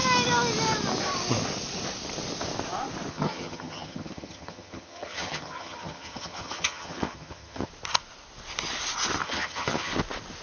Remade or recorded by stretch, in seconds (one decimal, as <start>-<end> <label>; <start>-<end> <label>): 0.0-3.1 recorded; 3.1-7.7 remade; 7.7-9.2 recorded; 9.2-9.9 remade; 9.9-10.4 recorded